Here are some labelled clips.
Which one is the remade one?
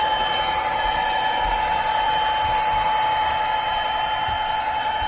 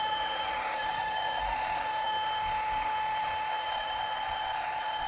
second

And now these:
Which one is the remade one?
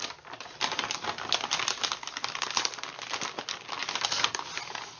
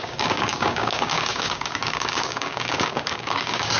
second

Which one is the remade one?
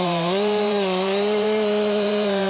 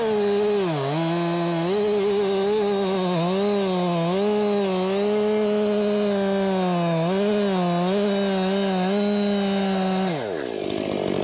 first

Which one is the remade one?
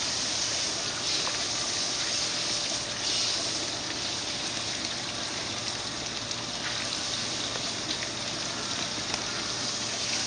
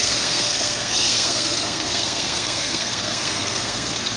second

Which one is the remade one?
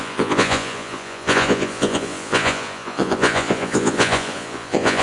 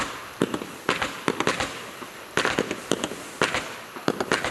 first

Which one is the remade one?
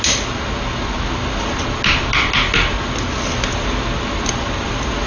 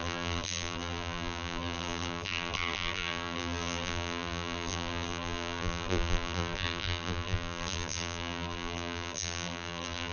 second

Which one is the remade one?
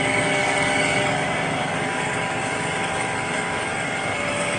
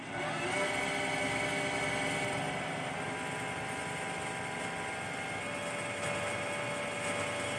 first